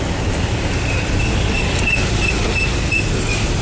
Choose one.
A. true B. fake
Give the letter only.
A